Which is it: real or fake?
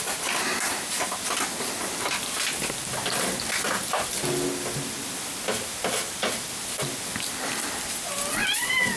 real